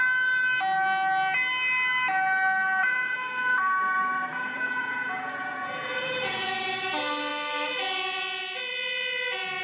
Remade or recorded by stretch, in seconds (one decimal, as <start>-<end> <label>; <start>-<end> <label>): 0.0-2.8 recorded; 2.8-3.6 remade; 3.6-4.3 recorded; 4.3-6.6 remade; 6.6-9.6 recorded